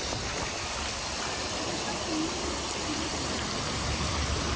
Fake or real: fake